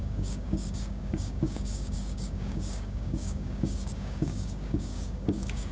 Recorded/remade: remade